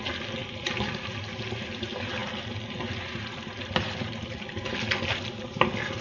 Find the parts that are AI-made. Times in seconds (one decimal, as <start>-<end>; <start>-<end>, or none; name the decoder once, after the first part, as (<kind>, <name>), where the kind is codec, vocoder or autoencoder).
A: 0.4-1.1 (vocoder, BigVGAN v2); 2.2-4.6